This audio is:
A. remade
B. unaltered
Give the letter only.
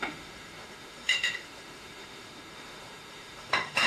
A